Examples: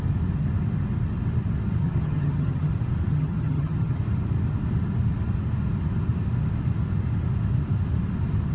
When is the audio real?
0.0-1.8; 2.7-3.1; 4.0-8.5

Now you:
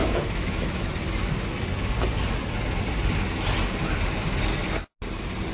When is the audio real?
0.8-5.5

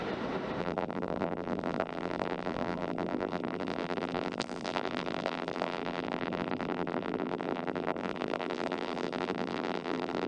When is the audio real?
0.0-0.6

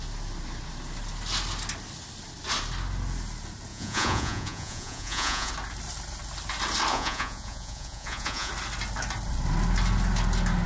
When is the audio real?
0.0-3.7; 5.5-6.9; 8.5-10.7